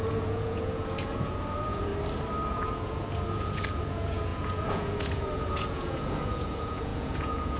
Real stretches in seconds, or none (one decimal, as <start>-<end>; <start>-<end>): 1.9-2.5